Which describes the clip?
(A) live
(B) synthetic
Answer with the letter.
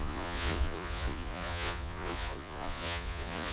B